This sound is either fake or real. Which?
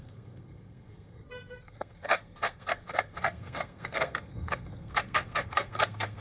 fake